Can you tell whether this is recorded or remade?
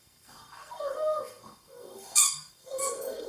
remade